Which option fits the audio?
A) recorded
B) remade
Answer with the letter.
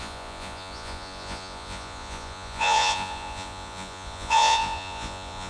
B